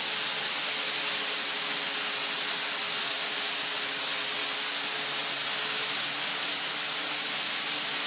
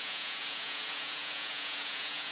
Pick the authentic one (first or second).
first